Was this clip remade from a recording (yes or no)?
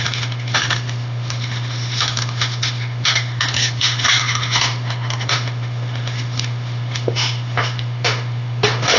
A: yes